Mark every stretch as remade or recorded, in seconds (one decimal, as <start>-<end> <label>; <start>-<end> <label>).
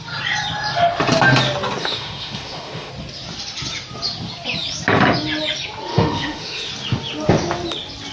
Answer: 0.0-1.8 recorded; 1.8-2.9 remade; 2.9-5.9 recorded; 5.9-6.7 remade; 6.7-8.1 recorded